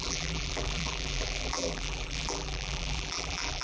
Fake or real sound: fake